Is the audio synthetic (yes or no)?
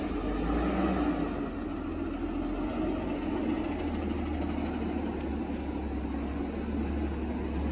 no